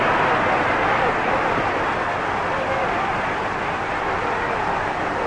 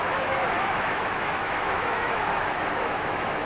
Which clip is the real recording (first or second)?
first